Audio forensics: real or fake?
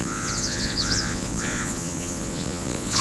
fake